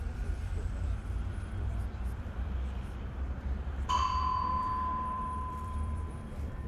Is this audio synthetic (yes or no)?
yes